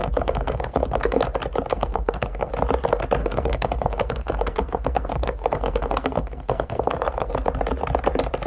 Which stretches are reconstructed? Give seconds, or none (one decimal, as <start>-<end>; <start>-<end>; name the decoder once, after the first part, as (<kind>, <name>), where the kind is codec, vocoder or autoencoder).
0.0-1.2 (codec, SNAC); 1.7-2.5; 3.2-7.3